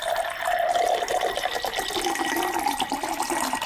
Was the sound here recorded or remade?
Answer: recorded